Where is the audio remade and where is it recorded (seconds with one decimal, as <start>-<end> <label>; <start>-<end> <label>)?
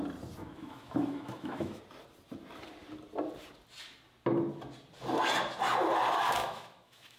0.0-0.4 recorded; 0.4-1.8 remade; 1.8-6.4 recorded; 6.4-7.2 remade